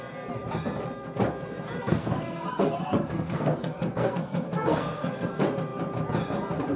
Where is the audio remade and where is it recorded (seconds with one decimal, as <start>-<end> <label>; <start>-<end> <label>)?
0.0-1.8 recorded; 1.8-5.3 remade; 5.3-6.8 recorded